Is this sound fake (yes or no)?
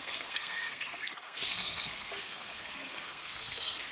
yes